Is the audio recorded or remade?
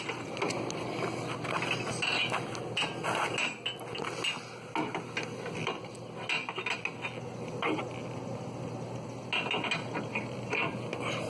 recorded